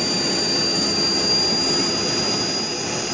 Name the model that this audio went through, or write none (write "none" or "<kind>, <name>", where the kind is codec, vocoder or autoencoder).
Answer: none